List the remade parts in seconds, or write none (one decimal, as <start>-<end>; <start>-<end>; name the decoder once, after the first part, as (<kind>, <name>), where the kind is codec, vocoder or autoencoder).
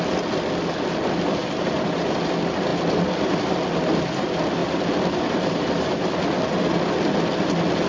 4.6-6.1 (vocoder, BigVGAN v2)